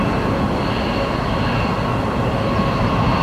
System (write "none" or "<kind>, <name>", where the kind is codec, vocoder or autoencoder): none